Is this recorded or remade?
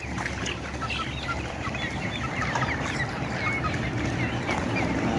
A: recorded